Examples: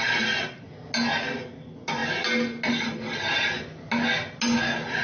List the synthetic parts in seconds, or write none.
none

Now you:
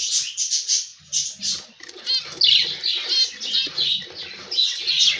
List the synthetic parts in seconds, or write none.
none

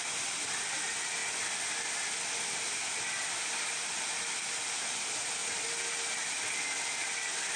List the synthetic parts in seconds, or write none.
none

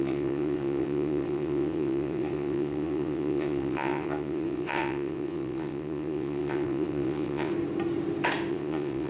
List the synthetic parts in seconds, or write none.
0.0-7.5; 8.5-9.1

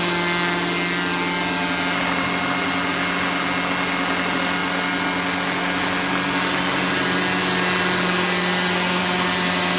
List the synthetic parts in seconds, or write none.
none

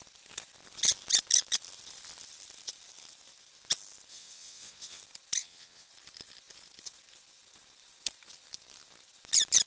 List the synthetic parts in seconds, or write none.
4.1-5.0; 5.4-5.9

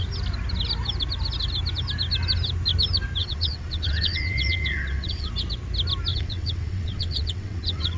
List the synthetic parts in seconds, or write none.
3.2-5.3; 6.1-8.0

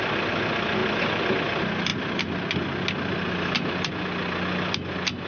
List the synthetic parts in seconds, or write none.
none